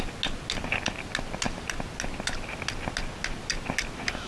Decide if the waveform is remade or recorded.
recorded